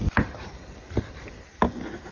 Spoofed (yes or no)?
no